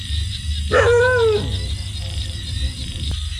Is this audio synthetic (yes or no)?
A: no